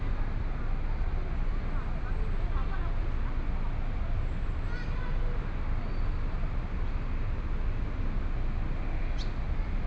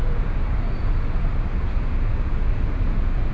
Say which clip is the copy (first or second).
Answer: second